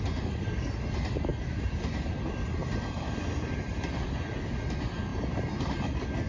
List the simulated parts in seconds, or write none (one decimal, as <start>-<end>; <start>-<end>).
1.3-4.3; 5.1-5.8